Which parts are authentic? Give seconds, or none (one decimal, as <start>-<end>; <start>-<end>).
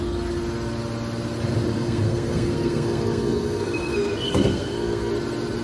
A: 0.0-1.7; 5.1-5.6